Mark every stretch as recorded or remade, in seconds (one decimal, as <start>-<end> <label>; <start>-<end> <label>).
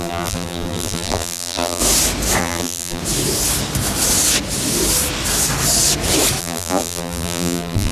0.0-1.8 remade; 1.8-2.4 recorded; 2.4-3.0 remade; 3.0-6.4 recorded; 6.4-7.9 remade